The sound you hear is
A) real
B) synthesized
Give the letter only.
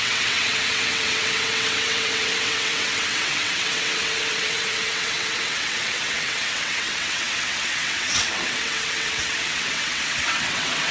B